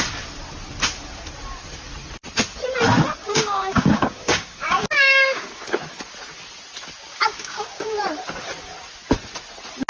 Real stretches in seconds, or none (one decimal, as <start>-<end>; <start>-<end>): 0.0-3.2; 5.6-7.1; 8.0-9.9

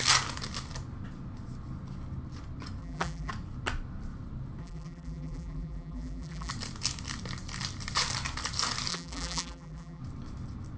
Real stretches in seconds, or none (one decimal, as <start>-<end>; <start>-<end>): 0.0-2.8; 3.3-4.6; 6.5-8.9; 10.0-10.8

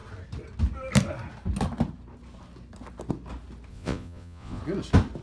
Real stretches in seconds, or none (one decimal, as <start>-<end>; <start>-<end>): 0.0-3.7; 4.6-5.2